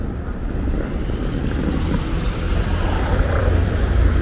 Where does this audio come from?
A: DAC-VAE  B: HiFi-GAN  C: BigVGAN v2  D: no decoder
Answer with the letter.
C